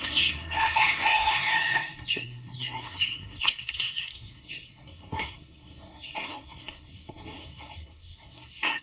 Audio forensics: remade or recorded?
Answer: remade